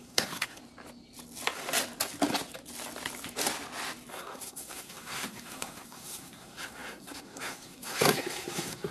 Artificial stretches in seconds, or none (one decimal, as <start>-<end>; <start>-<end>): 0.0-0.6; 4.1-8.9